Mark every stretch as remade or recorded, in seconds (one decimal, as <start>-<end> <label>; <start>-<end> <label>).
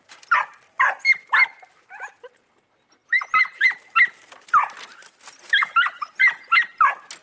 0.0-7.2 recorded